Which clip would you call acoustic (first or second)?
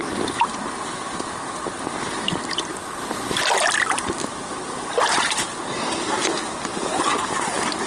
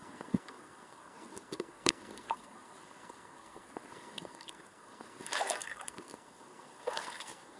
first